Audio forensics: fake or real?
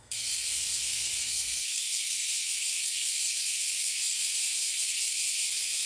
fake